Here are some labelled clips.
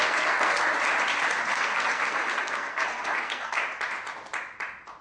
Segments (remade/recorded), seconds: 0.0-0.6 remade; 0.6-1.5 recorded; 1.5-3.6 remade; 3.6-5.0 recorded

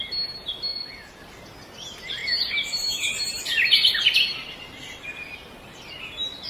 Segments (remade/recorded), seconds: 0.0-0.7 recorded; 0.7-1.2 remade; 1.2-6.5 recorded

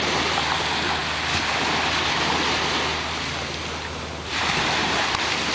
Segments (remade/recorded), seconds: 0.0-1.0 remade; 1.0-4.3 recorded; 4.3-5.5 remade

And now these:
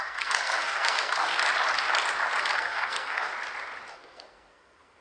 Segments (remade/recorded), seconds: 0.0-1.4 remade; 1.4-2.4 recorded; 2.4-3.3 remade; 3.3-3.9 recorded; 3.9-5.0 remade

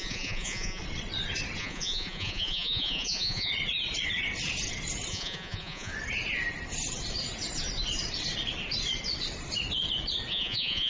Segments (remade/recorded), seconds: 0.0-0.8 remade; 0.8-1.6 recorded; 1.6-3.5 remade; 3.5-5.1 recorded; 5.1-5.9 remade; 5.9-10.3 recorded; 10.3-10.9 remade

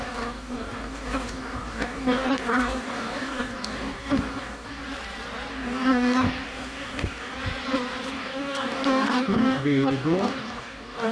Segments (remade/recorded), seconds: 0.0-4.8 remade; 4.8-5.5 recorded; 5.5-7.4 remade; 7.4-8.1 recorded; 8.1-11.1 remade

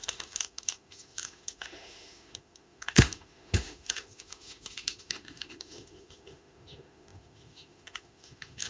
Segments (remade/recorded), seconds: 0.0-8.7 remade

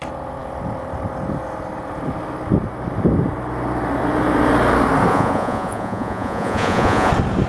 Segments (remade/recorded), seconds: 0.0-5.1 recorded; 5.1-7.1 remade; 7.1-7.5 recorded